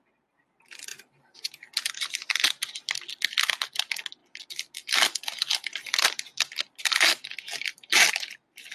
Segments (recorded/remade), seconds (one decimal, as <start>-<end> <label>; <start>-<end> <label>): 0.0-8.7 recorded